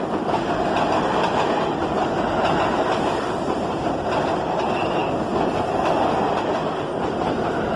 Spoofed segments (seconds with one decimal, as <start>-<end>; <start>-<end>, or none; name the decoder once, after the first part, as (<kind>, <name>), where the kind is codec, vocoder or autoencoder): none

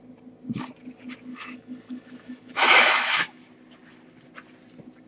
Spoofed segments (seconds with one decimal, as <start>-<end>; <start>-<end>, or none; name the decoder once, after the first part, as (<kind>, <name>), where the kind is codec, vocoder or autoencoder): 1.3-3.4 (autoencoder, DAC-VAE)